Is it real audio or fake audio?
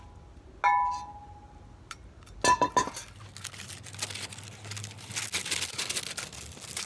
real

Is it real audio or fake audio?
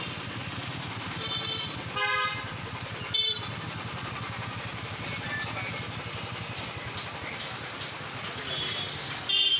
real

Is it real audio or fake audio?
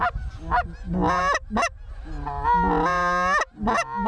real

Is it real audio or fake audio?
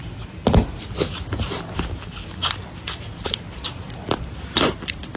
real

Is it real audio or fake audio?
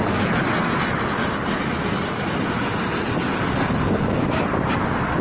real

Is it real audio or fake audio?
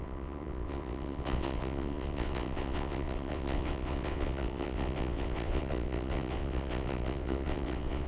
fake